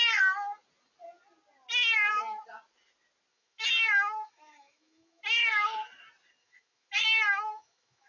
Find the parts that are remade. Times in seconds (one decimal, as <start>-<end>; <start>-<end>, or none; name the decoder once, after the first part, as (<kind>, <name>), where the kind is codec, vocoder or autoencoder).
3.3-5.2 (autoencoder, DAC-VAE); 6.4-8.1